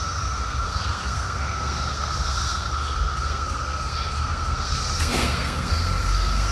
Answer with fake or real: fake